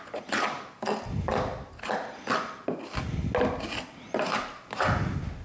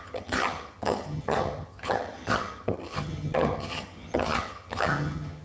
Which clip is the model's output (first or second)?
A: second